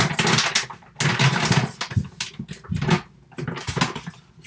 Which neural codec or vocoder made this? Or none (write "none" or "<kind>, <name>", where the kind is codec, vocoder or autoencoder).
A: none